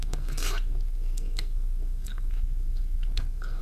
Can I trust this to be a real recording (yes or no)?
no